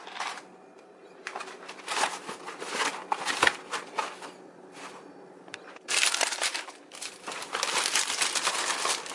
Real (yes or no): yes